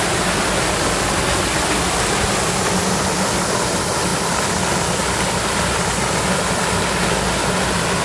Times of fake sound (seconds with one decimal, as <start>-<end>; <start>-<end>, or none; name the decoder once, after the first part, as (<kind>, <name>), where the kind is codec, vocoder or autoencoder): none